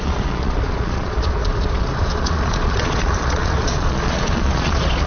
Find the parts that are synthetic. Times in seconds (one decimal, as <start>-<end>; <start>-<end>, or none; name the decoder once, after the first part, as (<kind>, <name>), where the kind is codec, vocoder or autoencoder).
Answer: 0.0-5.1 (vocoder, Vocos)